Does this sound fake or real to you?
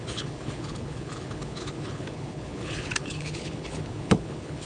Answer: fake